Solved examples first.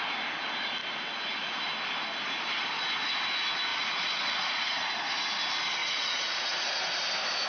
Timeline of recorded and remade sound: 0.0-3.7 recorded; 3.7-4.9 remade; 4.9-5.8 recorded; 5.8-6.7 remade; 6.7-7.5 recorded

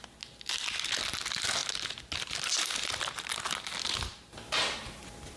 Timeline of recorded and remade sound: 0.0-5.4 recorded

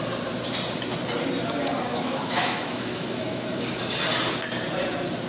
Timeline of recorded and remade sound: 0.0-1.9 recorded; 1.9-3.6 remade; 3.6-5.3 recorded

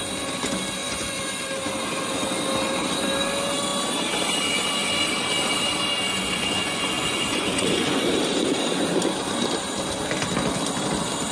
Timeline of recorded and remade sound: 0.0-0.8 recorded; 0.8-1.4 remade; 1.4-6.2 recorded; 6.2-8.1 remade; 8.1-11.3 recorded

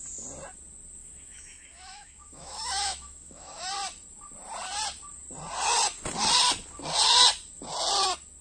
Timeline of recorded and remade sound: 0.0-1.0 recorded; 1.0-3.7 remade; 3.7-8.4 recorded